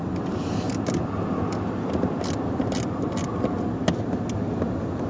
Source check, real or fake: real